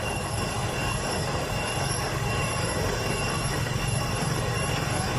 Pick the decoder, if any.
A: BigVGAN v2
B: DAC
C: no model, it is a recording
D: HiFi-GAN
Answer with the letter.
B